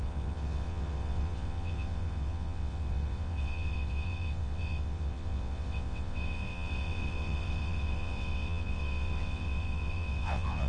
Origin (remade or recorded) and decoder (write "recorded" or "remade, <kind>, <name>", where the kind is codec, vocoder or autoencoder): remade, vocoder, WaveNeXt